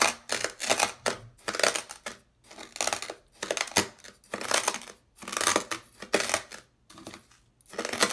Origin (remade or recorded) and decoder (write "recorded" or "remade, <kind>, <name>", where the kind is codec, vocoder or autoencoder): recorded